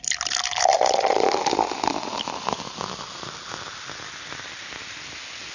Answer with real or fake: real